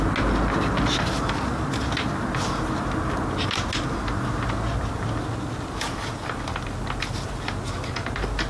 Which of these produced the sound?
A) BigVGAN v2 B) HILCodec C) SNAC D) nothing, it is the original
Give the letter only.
D